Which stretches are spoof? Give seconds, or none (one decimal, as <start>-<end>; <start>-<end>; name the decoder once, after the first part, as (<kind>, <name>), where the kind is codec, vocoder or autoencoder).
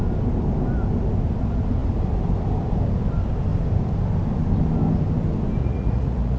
5.6-6.4 (vocoder, Vocos)